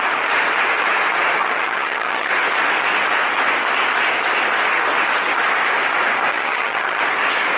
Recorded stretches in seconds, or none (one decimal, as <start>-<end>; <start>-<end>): 0.0-1.4; 2.3-6.3; 7.0-7.6